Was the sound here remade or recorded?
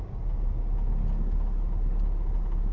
recorded